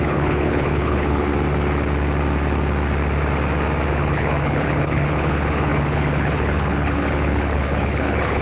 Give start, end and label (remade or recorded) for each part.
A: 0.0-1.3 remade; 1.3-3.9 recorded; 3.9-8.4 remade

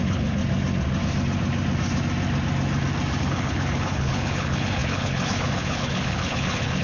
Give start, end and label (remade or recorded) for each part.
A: 0.0-0.4 remade; 0.4-3.2 recorded; 3.2-6.8 remade

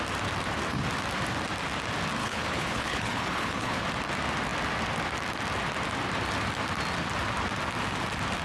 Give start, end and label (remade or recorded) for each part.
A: 0.0-2.2 recorded; 2.2-3.8 remade; 3.8-8.4 recorded

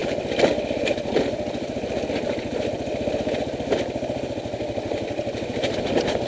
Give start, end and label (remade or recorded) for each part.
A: 0.0-6.3 recorded